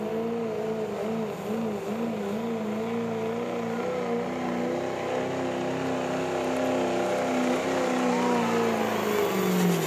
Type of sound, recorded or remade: recorded